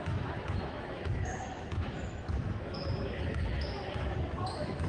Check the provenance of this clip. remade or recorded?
remade